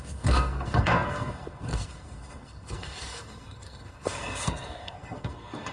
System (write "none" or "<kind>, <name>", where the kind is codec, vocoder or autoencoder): codec, SNAC